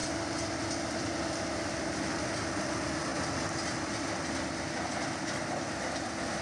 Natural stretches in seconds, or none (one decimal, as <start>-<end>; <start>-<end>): 0.0-6.4